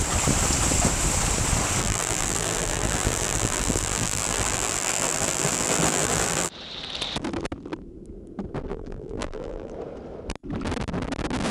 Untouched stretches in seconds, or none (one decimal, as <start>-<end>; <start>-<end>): 0.0-1.8; 6.5-8.7; 9.7-11.5